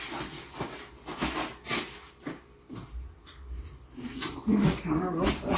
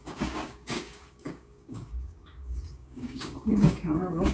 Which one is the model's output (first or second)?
second